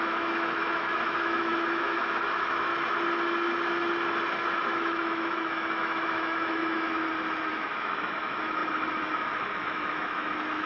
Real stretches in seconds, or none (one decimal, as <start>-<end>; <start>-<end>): 2.7-4.7; 6.9-7.5

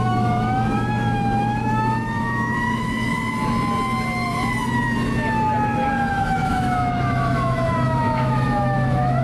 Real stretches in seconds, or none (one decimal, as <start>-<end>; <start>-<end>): 3.1-6.1